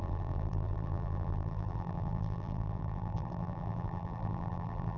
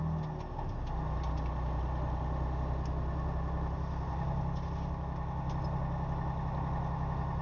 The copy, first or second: first